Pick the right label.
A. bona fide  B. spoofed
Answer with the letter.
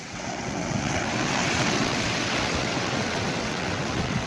B